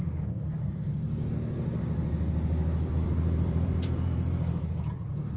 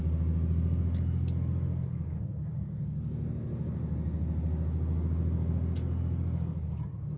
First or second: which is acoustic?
second